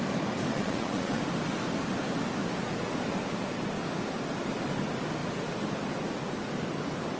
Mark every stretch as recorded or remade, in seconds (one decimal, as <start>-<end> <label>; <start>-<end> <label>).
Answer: 0.0-0.5 recorded; 0.5-1.2 remade; 1.2-7.2 recorded